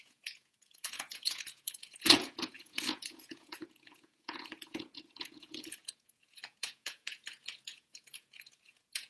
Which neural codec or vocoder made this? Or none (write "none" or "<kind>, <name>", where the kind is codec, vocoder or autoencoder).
vocoder, Vocos